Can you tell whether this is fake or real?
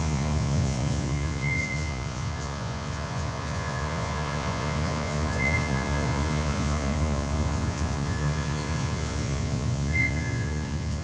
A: fake